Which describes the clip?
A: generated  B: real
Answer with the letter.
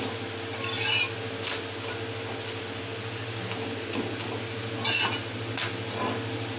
B